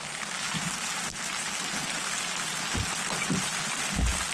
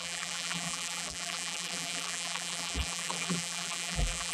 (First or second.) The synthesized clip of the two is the second